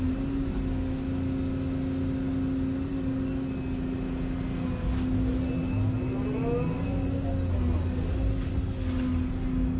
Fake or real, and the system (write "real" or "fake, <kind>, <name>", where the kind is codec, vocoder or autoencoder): real